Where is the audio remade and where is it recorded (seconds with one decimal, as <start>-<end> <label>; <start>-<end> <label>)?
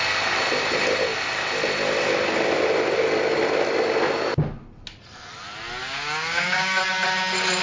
0.0-5.8 recorded; 5.8-6.8 remade; 6.8-7.6 recorded